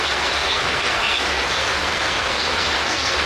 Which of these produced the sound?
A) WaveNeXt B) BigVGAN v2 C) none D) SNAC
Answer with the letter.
D